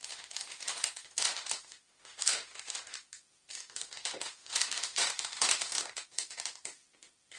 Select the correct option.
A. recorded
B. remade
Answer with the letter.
B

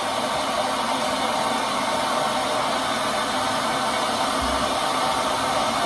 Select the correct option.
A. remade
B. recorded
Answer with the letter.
B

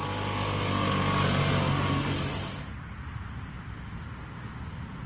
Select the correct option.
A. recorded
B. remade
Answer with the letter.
A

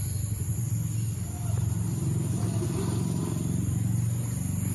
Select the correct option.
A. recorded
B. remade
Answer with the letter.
A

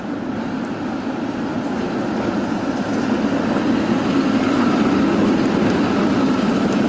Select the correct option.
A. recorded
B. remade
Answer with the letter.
A